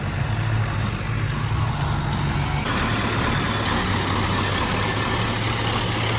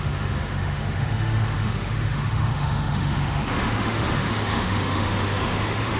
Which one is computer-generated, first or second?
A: second